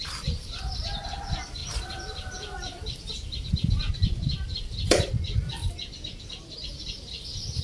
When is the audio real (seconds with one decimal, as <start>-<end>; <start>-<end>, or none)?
5.6-6.2